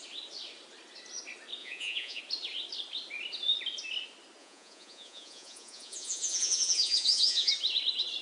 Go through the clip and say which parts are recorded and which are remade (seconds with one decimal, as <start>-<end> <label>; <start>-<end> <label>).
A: 0.0-1.6 recorded; 1.6-2.2 remade; 2.2-4.4 recorded; 4.4-7.5 remade; 7.5-8.2 recorded